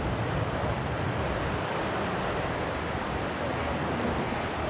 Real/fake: real